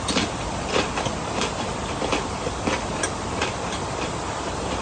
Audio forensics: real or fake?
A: real